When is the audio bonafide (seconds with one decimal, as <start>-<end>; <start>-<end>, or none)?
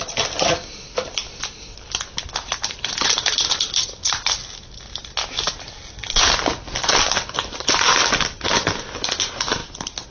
1.2-10.1